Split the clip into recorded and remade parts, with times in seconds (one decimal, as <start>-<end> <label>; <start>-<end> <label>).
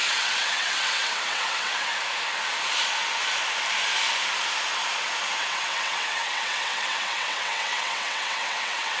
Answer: 0.0-1.9 remade; 1.9-5.4 recorded; 5.4-9.0 remade